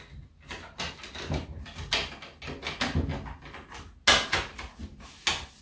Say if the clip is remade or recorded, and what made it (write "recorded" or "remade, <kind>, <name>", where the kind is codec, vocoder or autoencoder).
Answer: recorded